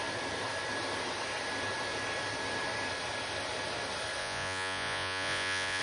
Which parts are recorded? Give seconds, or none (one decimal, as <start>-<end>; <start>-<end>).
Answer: 0.0-4.2